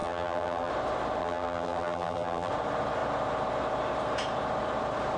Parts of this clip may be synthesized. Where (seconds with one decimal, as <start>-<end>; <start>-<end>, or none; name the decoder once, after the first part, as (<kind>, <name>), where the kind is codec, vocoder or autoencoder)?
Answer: 0.0-0.7 (vocoder, BigVGAN v2); 1.2-2.5